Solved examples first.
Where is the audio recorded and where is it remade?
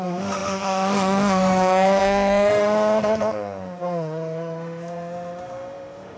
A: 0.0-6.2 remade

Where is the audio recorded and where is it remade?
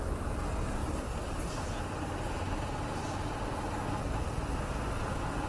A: 0.0-5.5 recorded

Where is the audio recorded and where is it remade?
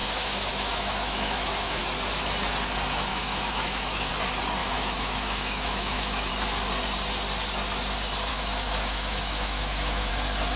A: 0.0-1.8 remade; 1.8-3.1 recorded; 3.1-4.1 remade; 4.1-4.6 recorded; 4.6-6.3 remade; 6.3-8.3 recorded; 8.3-10.1 remade; 10.1-10.6 recorded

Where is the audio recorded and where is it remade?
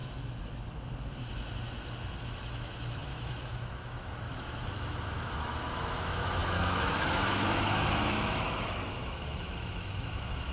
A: 0.0-2.2 recorded; 2.2-10.5 remade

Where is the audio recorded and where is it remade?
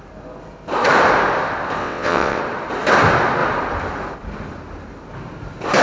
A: 0.0-1.8 recorded; 1.8-2.4 remade; 2.4-5.8 recorded